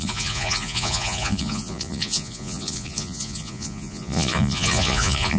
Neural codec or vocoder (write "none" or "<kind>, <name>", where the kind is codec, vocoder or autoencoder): vocoder, Vocos